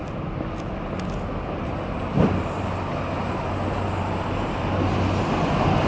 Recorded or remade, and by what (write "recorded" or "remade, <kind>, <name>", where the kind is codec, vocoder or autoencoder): recorded